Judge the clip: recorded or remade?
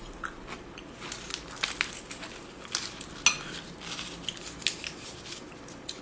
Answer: recorded